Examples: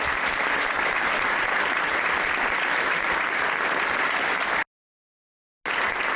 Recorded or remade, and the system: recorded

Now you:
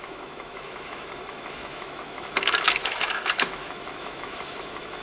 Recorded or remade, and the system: remade, autoencoder, DAC-VAE